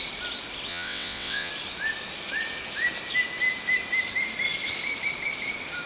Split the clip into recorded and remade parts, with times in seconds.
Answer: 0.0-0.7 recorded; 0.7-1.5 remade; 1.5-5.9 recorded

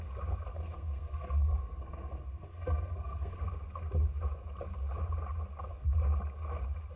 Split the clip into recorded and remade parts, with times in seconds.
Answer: 0.0-0.5 recorded; 0.5-3.4 remade; 3.4-7.0 recorded

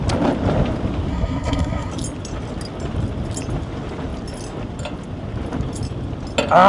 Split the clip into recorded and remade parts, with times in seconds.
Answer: 0.0-1.1 recorded; 1.1-1.9 remade; 1.9-6.7 recorded